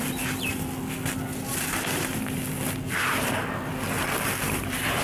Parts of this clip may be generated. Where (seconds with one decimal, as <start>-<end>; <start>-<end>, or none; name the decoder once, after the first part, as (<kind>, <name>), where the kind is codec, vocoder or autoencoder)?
0.5-3.4 (vocoder, BigVGAN v2)